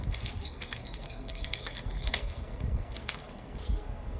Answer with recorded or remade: remade